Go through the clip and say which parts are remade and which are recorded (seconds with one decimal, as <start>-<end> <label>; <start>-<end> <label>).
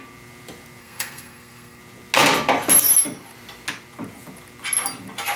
0.0-0.8 recorded; 0.8-1.8 remade; 1.8-5.4 recorded